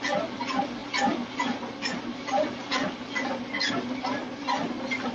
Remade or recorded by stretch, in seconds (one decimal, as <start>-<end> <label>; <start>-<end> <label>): 0.0-5.1 recorded